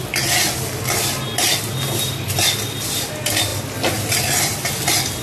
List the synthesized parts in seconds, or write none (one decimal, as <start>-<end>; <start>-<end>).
none

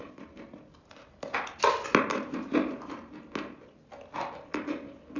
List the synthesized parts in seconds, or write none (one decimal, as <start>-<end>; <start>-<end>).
none

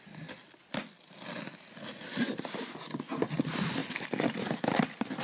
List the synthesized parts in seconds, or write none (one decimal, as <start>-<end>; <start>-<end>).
none